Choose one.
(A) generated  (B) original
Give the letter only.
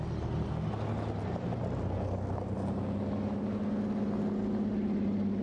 B